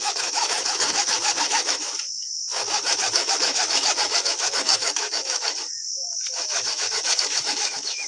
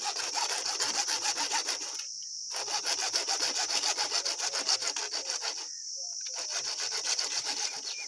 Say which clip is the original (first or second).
second